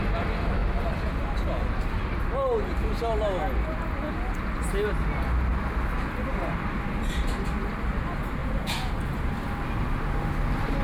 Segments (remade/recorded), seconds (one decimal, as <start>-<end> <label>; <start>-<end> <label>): 0.0-8.4 recorded; 8.4-8.9 remade; 8.9-10.8 recorded